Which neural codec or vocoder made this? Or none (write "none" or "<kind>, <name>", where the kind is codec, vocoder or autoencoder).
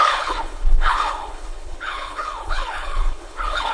codec, HILCodec